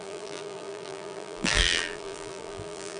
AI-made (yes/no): yes